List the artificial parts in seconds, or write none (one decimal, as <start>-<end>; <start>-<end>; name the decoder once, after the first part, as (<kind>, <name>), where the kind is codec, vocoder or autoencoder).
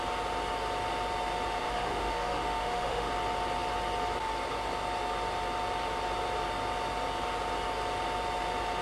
1.6-3.1 (autoencoder, DAC-VAE)